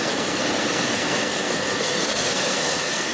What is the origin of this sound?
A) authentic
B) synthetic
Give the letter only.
B